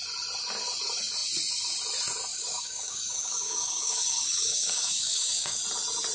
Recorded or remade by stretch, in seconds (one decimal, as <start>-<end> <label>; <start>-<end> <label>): 0.0-2.3 recorded; 2.3-5.6 remade; 5.6-6.1 recorded